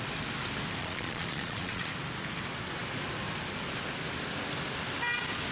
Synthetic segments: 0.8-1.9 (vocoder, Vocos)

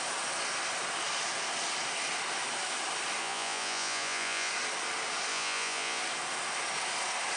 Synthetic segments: 3.2-4.5 (vocoder, Vocos); 5.3-6.0